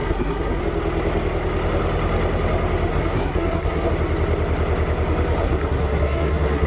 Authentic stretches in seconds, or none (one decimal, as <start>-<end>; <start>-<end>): 0.6-2.9; 3.9-5.4